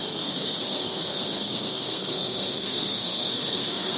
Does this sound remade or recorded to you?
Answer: remade